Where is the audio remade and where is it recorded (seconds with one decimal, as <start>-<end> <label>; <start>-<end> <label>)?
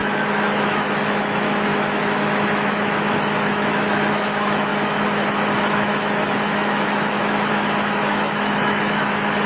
0.0-9.5 remade